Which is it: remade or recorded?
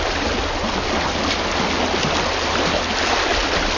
recorded